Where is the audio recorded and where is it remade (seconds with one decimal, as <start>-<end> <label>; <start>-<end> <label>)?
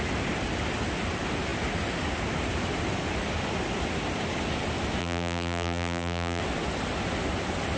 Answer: 0.0-5.0 recorded; 5.0-6.4 remade; 6.4-7.8 recorded